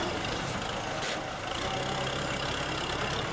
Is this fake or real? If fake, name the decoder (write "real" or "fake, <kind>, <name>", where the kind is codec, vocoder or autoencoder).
real